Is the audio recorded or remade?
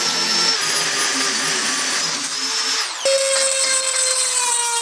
recorded